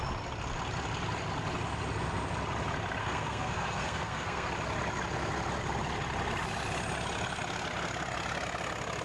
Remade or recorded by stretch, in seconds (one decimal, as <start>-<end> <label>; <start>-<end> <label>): 0.0-3.0 recorded; 3.0-4.5 remade; 4.5-9.0 recorded